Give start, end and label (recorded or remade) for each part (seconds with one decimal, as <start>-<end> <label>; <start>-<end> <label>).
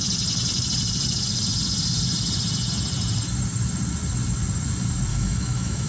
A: 0.0-5.1 recorded; 5.1-5.9 remade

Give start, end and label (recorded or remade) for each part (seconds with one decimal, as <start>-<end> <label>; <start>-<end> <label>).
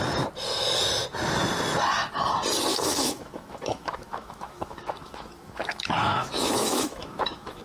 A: 0.0-2.7 recorded; 2.7-7.6 remade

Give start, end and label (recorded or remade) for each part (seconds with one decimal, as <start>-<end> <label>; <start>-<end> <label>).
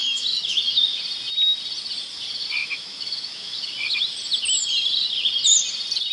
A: 0.0-1.0 remade; 1.0-2.6 recorded; 2.6-3.7 remade; 3.7-6.1 recorded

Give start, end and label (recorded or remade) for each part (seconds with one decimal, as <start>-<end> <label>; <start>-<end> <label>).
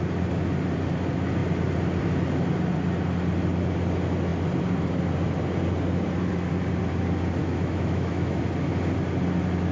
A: 0.0-7.4 recorded; 7.4-8.4 remade; 8.4-9.7 recorded